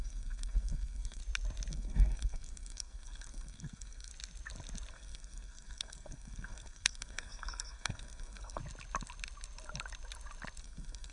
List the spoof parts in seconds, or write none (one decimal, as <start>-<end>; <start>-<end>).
0.0-1.2; 1.7-4.1; 4.9-8.6; 10.6-11.1